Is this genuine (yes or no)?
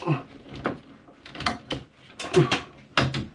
yes